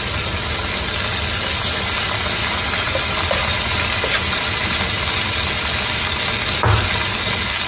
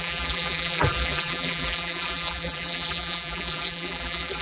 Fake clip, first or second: second